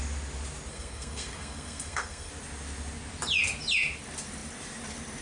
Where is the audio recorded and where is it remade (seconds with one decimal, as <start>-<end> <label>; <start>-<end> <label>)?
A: 0.0-0.7 recorded; 0.7-2.3 remade; 2.3-5.2 recorded